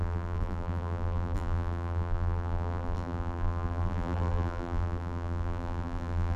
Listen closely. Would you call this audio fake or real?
fake